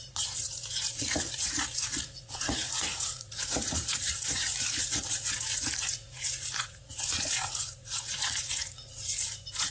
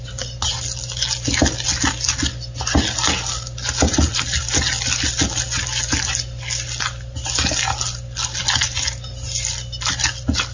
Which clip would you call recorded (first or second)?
second